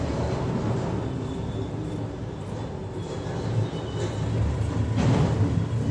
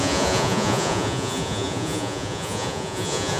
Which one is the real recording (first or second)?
first